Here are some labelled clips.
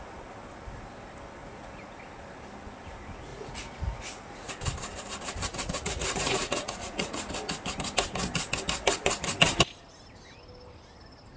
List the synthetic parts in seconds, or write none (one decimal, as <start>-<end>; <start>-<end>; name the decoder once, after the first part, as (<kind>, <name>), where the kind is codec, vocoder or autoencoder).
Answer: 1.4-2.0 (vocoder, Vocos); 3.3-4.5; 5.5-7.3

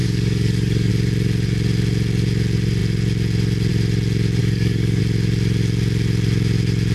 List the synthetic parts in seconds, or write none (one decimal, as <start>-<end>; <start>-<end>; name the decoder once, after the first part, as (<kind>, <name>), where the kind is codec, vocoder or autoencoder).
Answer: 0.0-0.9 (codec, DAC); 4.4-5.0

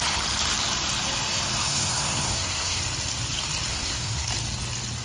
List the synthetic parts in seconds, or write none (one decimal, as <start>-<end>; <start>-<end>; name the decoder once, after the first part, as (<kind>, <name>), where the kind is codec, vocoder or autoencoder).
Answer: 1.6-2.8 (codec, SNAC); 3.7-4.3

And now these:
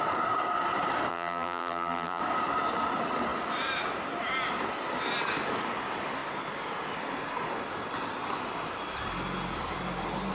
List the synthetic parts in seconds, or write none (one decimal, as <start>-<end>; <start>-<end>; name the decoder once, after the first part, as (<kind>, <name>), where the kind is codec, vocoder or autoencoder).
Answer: 1.1-2.2 (vocoder, BigVGAN v2)

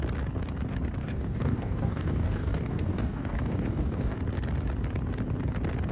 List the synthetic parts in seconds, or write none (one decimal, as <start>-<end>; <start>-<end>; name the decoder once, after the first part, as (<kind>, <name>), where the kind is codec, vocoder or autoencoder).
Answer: 1.0-4.2 (codec, DAC)

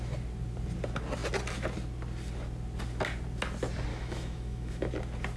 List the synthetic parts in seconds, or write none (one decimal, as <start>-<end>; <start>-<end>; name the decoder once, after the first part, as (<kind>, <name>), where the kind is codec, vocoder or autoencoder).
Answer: 3.9-4.9 (autoencoder, DAC-VAE)

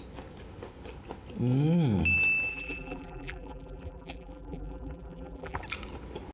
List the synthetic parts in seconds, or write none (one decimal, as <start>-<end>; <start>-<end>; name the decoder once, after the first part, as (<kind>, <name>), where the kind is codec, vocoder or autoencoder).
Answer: 2.5-5.6 (vocoder, BigVGAN v2)